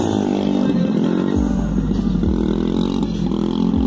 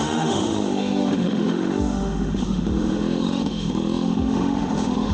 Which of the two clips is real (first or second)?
first